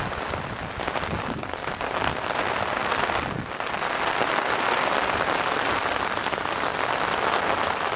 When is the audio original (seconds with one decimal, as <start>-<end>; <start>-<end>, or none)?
0.0-8.0